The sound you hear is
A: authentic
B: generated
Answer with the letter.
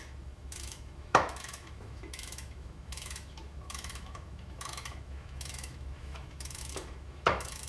B